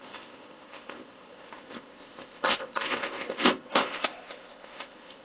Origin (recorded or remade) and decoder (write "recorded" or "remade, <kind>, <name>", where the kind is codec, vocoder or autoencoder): remade, codec, ZipCodec